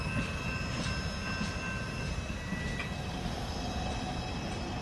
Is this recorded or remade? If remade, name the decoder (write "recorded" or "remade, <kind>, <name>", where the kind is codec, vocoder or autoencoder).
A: recorded